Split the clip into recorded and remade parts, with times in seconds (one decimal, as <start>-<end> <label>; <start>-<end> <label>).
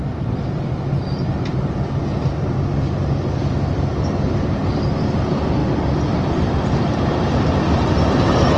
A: 0.0-2.7 remade; 2.7-4.4 recorded; 4.4-5.6 remade; 5.6-6.6 recorded; 6.6-8.6 remade